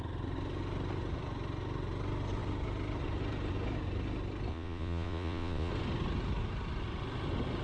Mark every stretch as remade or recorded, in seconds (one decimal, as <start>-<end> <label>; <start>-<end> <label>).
0.0-4.5 recorded; 4.5-5.7 remade; 5.7-7.6 recorded